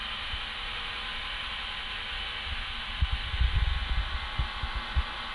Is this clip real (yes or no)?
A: yes